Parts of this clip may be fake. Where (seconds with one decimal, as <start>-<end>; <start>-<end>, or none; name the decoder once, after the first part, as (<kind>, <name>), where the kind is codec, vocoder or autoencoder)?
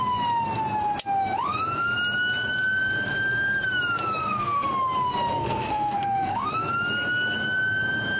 4.2-4.7 (codec, SNAC); 5.3-6.5